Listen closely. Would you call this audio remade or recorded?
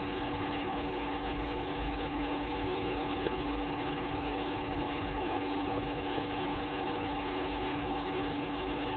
remade